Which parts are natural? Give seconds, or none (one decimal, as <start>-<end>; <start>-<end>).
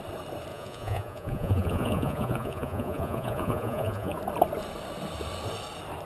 0.0-0.5; 4.2-6.1